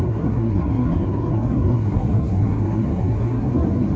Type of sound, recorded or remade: remade